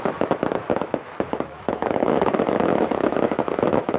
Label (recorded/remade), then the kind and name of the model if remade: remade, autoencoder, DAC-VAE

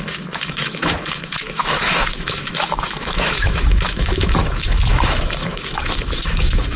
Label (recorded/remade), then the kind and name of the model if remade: remade, autoencoder, DAC-VAE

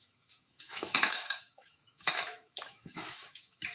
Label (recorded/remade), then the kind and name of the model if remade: remade, autoencoder, DAC-VAE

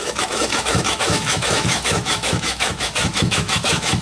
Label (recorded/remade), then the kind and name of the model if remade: remade, autoencoder, DAC-VAE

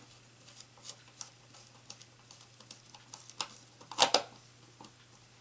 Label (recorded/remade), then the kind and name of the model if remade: recorded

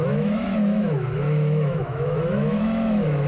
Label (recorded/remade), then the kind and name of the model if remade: remade, autoencoder, DAC-VAE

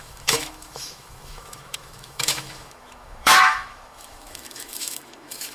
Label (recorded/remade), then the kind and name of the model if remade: remade, autoencoder, DAC-VAE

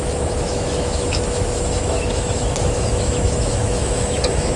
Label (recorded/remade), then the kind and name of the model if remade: remade, autoencoder, DAC-VAE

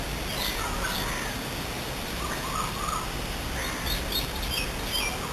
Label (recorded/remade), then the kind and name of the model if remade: recorded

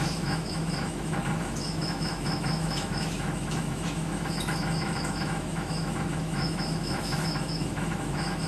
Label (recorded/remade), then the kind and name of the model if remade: remade, autoencoder, DAC-VAE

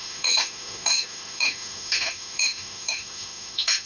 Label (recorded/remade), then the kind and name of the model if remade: remade, autoencoder, DAC-VAE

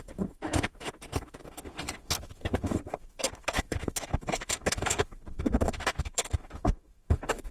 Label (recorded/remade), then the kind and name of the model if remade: remade, autoencoder, DAC-VAE